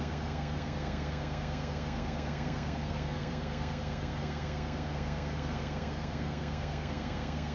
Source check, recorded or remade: remade